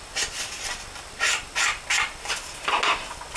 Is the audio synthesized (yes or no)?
no